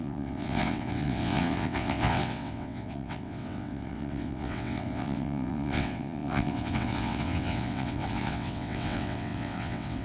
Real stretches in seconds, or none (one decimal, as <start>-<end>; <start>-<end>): none